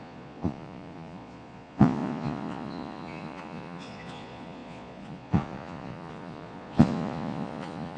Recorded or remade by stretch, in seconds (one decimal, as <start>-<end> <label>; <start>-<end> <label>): 0.0-8.0 remade